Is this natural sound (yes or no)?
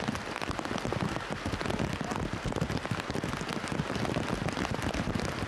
yes